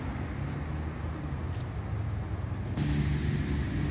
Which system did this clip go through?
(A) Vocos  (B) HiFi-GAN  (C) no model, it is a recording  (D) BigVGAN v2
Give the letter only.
C